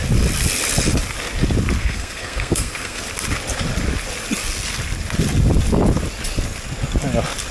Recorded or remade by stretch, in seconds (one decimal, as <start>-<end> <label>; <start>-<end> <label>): 0.0-1.8 recorded; 1.8-3.0 remade; 3.0-7.5 recorded